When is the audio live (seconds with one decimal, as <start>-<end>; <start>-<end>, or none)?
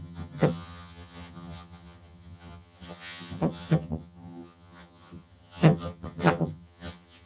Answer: none